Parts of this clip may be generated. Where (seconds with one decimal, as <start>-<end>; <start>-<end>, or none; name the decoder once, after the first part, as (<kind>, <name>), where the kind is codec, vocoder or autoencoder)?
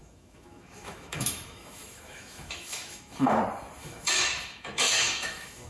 0.0-3.4 (autoencoder, DAC-VAE); 3.8-5.7